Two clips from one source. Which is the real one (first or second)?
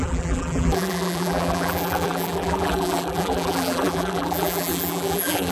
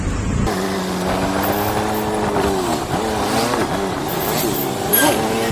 second